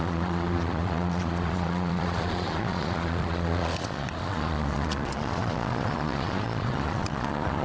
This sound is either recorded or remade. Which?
remade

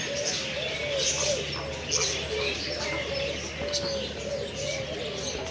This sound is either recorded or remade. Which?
recorded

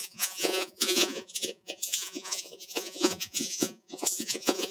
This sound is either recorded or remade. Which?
remade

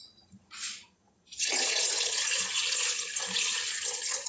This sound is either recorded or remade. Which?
remade